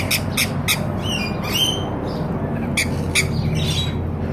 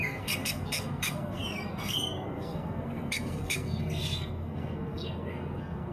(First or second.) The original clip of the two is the first